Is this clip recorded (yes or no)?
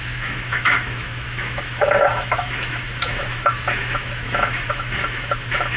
no